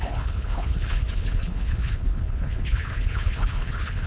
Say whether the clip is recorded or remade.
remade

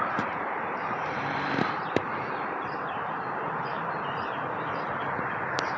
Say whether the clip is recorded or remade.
remade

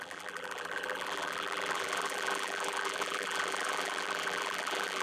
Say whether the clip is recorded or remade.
remade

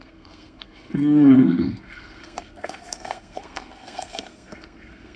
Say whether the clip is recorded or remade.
remade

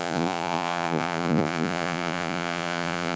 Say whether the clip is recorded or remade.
remade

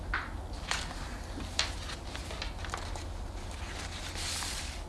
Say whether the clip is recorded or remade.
recorded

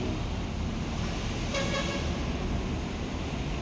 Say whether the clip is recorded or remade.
recorded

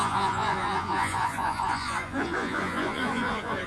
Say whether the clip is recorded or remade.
remade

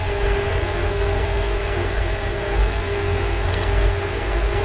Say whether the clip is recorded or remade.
remade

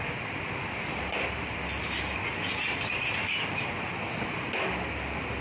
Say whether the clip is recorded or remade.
recorded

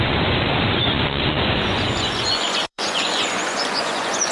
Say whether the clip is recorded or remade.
remade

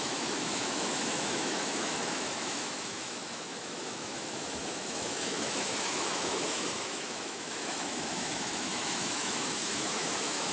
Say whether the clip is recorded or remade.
remade